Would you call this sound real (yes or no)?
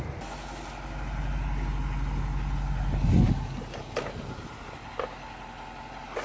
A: yes